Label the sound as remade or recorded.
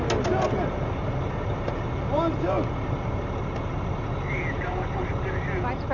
recorded